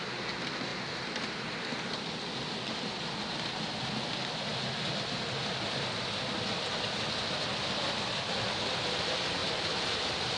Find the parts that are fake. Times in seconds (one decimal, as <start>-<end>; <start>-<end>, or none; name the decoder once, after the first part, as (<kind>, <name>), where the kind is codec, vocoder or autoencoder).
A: 0.7-1.7 (vocoder, BigVGAN v2); 9.4-10.4